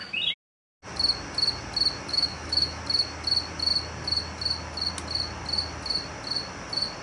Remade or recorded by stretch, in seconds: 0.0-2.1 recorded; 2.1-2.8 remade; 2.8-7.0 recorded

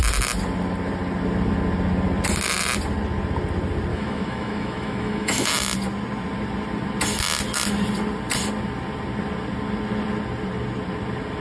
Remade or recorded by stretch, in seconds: 0.0-3.9 recorded; 3.9-5.5 remade; 5.5-11.4 recorded

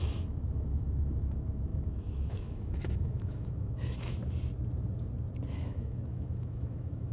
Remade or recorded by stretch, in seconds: 0.0-4.2 remade; 4.2-5.5 recorded; 5.5-7.1 remade

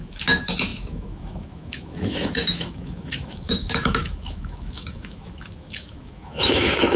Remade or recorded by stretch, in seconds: 0.0-7.0 remade

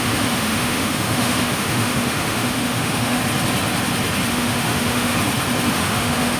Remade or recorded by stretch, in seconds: 0.0-3.2 remade; 3.2-4.3 recorded; 4.3-5.1 remade; 5.1-5.7 recorded; 5.7-6.4 remade